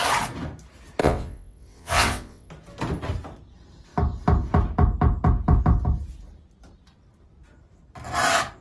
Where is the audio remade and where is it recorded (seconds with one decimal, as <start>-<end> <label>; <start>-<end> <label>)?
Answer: 0.0-1.0 recorded; 1.0-2.5 remade; 2.5-8.6 recorded